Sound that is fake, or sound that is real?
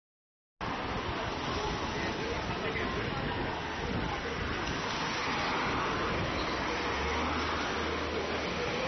real